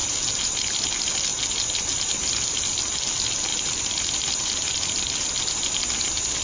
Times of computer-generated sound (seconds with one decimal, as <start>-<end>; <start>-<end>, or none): 3.5-5.1